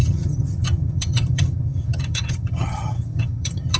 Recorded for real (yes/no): no